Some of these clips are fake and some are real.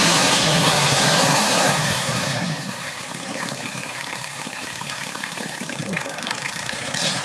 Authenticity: fake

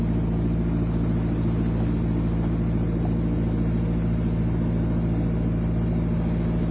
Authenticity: real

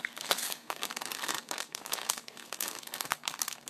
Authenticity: fake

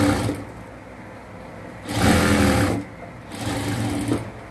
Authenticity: real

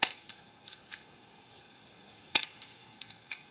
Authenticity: fake